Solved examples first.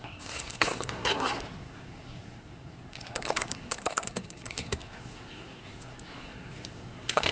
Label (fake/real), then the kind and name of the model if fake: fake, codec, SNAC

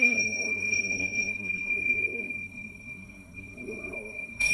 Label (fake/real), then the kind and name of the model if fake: fake, codec, SNAC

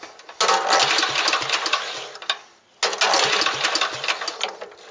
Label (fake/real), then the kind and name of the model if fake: real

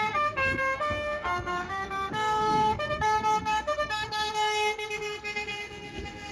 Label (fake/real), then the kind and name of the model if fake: fake, codec, SNAC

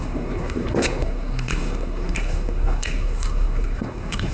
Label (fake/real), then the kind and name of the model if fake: fake, codec, SNAC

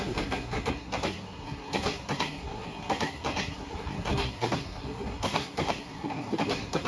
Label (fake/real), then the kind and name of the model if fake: fake, codec, SNAC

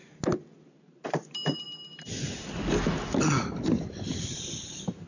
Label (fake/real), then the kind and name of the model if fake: real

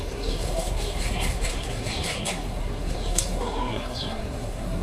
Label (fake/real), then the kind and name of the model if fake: fake, codec, SNAC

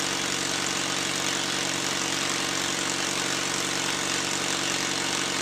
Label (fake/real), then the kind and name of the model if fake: real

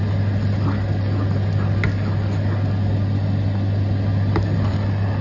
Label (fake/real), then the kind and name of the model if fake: real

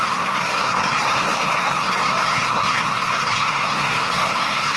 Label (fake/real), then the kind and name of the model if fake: fake, codec, SNAC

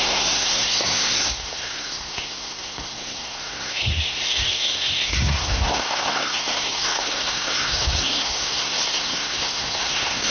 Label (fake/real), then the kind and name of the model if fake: fake, codec, SNAC